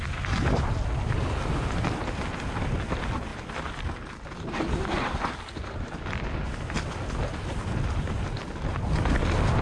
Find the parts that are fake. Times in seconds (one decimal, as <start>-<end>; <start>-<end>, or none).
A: none